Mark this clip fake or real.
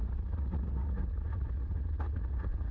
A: fake